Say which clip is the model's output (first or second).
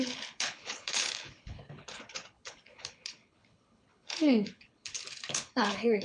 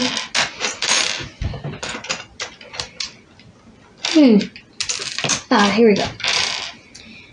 first